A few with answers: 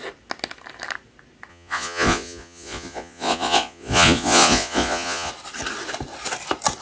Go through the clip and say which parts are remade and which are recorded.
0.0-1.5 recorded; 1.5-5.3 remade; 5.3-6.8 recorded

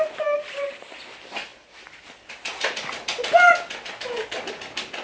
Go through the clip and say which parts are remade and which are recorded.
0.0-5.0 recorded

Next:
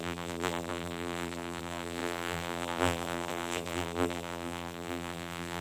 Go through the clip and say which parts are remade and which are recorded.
0.0-5.6 remade